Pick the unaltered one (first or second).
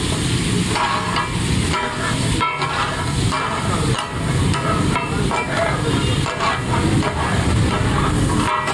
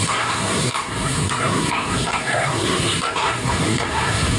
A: first